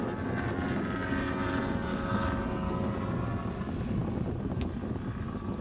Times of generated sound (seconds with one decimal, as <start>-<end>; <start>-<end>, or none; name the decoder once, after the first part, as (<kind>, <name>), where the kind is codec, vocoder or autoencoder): 1.9-2.4 (autoencoder, DAC-VAE)